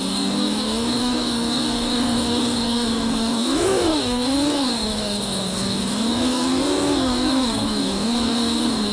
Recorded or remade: remade